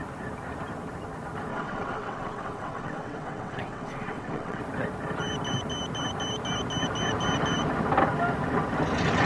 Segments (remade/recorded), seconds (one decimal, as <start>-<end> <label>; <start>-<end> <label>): 0.0-1.5 recorded; 1.5-4.6 remade; 4.6-9.3 recorded